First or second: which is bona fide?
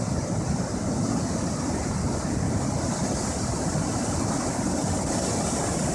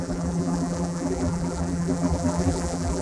first